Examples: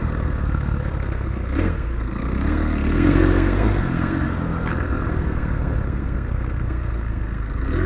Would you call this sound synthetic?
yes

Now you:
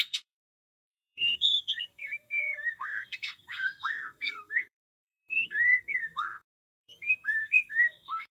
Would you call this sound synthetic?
yes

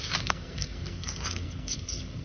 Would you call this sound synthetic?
yes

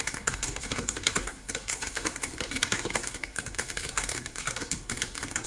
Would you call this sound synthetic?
yes